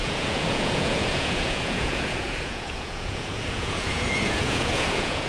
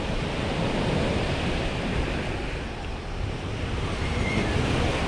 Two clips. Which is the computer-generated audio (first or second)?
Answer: first